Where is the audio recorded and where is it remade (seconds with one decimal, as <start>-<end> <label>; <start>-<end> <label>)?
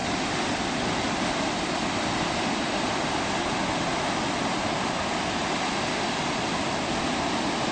0.0-7.7 recorded